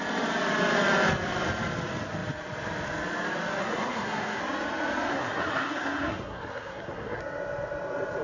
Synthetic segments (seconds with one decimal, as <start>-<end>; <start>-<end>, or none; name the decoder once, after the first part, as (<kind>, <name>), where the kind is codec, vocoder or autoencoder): 3.6-4.4 (codec, SNAC); 5.1-7.2